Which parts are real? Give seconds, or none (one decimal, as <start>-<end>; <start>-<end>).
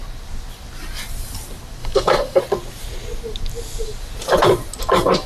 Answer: 0.0-1.8; 2.4-5.3